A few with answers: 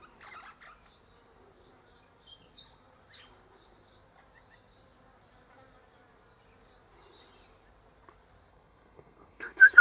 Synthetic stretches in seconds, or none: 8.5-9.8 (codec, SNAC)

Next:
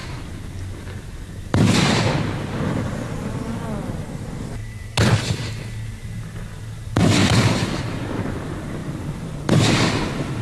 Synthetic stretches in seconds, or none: none